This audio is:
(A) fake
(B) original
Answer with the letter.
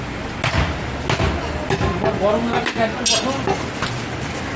B